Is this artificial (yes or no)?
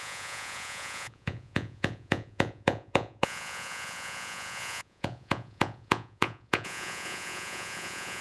yes